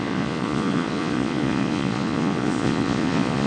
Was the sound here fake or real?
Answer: fake